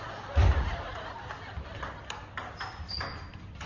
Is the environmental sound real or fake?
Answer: real